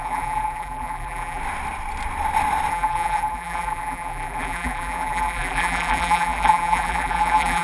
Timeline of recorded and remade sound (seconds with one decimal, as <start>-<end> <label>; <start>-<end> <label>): 0.0-1.4 remade; 1.4-2.7 recorded; 2.7-7.6 remade